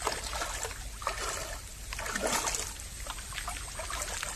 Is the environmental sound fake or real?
real